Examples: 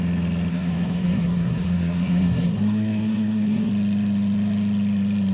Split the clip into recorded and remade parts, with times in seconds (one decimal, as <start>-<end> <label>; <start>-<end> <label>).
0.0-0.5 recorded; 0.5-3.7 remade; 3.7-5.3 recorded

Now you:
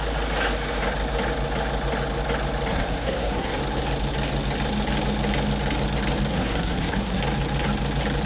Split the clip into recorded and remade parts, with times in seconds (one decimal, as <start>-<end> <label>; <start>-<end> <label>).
0.0-2.7 recorded; 2.7-3.6 remade; 3.6-6.3 recorded; 6.3-7.2 remade; 7.2-8.3 recorded

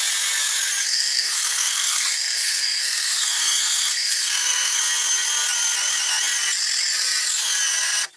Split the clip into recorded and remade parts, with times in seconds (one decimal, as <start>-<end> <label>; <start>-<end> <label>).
0.0-0.8 recorded; 0.8-4.8 remade; 4.8-8.2 recorded